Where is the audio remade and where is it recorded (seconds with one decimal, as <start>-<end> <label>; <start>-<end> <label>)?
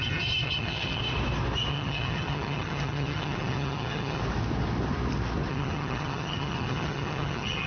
0.0-1.0 remade; 1.0-1.7 recorded; 1.7-4.2 remade; 4.2-5.5 recorded; 5.5-7.7 remade